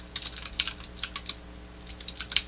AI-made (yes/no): no